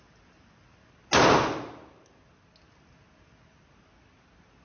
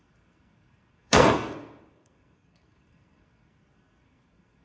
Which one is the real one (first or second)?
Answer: first